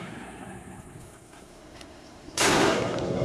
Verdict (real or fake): fake